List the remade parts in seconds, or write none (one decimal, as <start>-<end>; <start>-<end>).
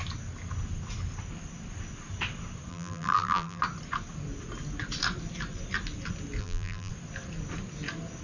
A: 2.7-3.6; 6.4-6.9